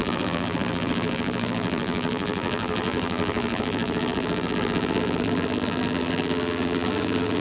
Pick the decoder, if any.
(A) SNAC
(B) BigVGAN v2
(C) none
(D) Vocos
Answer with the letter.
B